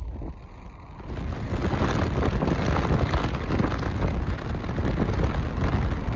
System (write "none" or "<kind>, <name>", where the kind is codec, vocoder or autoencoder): none